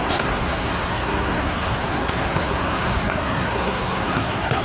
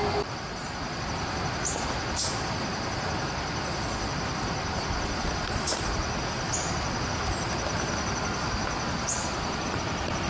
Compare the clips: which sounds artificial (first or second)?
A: first